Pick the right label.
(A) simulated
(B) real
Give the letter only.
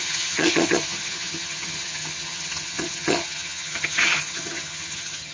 A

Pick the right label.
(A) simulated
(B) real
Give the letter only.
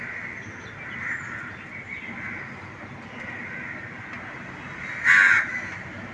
B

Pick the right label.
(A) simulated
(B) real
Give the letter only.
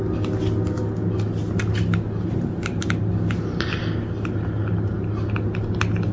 B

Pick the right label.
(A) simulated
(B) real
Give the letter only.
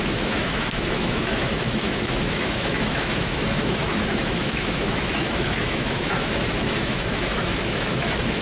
A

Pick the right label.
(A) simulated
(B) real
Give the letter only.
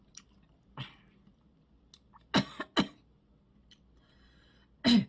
B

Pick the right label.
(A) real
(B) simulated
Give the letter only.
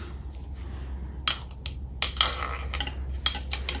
A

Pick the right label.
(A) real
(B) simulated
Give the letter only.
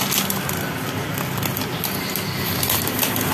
A